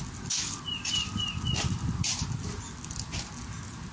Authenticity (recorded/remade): recorded